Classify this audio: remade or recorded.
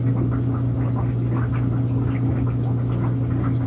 recorded